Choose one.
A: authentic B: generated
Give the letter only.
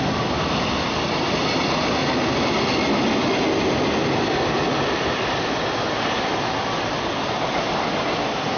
A